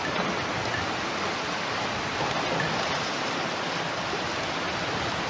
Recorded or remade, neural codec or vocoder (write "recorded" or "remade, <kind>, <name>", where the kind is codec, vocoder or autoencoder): recorded